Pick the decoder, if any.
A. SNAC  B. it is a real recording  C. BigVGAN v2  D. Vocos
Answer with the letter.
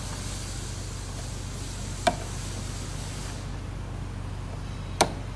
B